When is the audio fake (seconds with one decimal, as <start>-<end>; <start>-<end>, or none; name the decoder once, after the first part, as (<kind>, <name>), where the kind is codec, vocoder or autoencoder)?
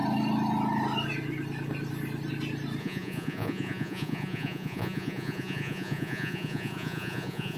2.8-7.6 (vocoder, Vocos)